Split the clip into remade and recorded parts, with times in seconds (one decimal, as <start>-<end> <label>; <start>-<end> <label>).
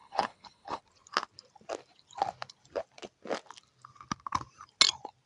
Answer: 0.0-0.8 remade; 0.8-5.3 recorded